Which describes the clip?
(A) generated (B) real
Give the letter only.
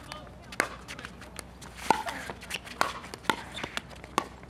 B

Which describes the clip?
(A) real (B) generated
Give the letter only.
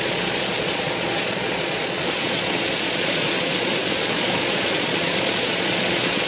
B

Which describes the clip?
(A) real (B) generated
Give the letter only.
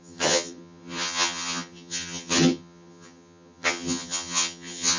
B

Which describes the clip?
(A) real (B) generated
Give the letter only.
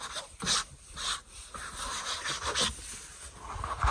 A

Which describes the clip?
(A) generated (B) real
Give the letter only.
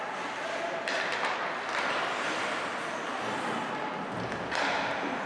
B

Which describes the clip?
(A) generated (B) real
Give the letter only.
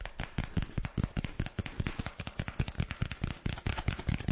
B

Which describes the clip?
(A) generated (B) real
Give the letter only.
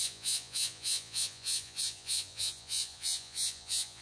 A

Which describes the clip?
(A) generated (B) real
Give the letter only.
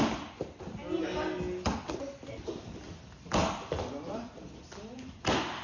B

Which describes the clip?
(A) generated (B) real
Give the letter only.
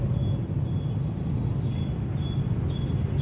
B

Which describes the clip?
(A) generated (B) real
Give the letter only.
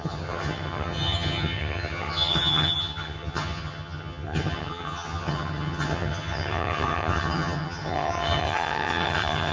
A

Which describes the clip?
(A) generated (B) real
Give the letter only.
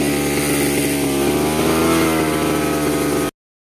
B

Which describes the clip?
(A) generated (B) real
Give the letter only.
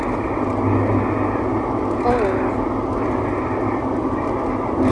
B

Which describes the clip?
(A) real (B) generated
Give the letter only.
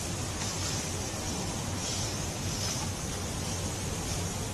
A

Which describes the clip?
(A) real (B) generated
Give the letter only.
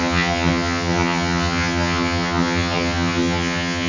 B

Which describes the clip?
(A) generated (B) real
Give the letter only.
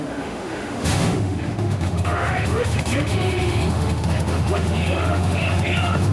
A